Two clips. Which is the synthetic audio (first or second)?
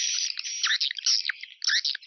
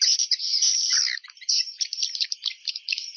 second